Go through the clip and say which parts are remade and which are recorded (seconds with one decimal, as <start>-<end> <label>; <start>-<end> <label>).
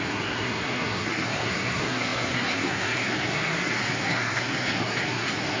0.0-5.6 remade